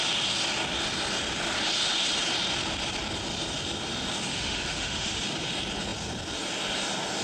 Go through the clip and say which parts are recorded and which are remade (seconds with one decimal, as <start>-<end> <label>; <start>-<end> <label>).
0.0-4.3 recorded; 4.3-5.2 remade; 5.2-7.2 recorded